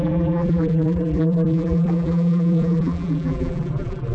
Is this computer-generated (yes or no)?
yes